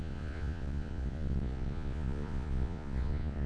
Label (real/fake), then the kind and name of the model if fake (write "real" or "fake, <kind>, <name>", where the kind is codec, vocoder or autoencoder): fake, vocoder, Vocos